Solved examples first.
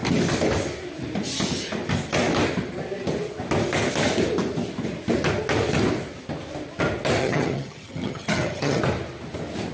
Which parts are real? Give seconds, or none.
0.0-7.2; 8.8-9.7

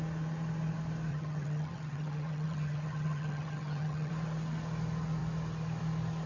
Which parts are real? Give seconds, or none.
0.0-1.1; 4.1-6.3